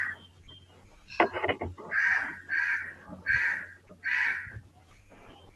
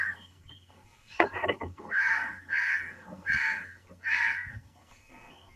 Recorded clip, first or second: first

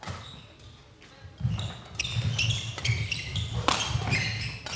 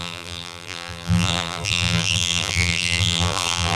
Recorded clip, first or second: first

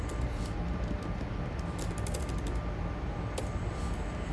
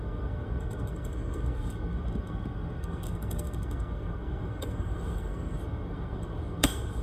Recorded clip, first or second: first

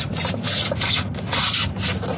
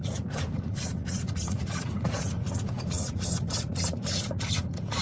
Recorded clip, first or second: first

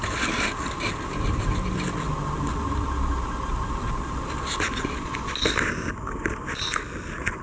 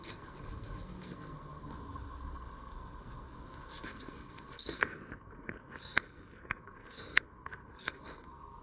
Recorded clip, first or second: first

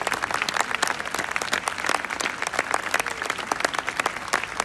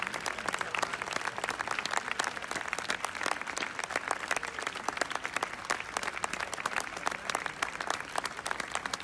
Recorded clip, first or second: first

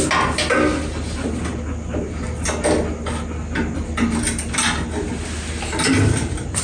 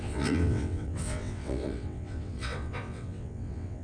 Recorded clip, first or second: first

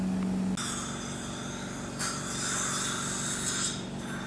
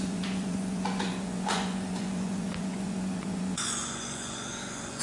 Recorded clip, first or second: first